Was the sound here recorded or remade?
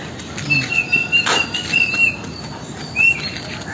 recorded